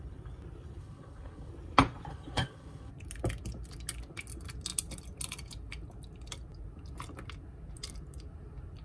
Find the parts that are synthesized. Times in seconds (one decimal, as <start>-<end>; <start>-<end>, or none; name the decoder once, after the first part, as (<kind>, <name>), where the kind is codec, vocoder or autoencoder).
0.8-1.5 (codec, HILCodec); 2.1-2.9